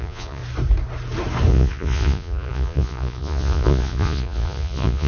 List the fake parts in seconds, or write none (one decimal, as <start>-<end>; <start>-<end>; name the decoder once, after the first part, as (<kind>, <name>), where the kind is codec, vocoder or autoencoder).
0.0-0.4 (vocoder, Vocos); 1.5-5.1